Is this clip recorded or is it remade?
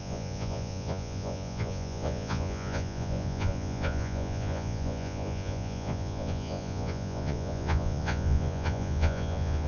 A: remade